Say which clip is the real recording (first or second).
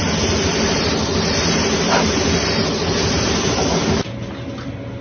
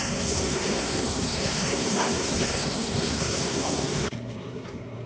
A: first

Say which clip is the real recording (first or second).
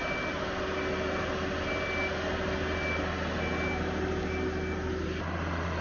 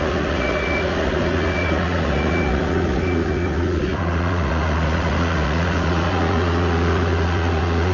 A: first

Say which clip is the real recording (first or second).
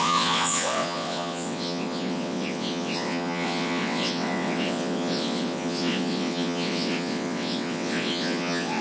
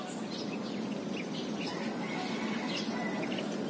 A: second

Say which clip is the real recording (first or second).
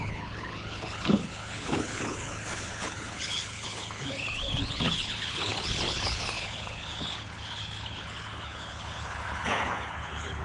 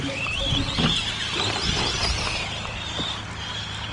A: second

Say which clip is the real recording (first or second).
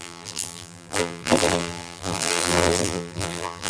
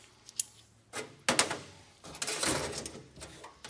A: second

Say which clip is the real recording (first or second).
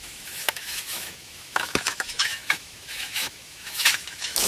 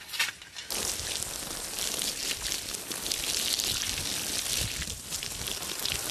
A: second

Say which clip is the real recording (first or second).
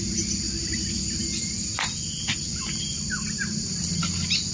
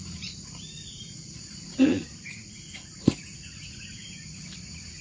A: first